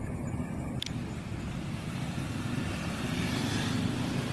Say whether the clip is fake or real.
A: real